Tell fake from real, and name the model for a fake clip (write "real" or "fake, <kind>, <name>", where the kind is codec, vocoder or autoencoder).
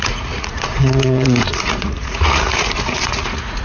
fake, vocoder, Vocos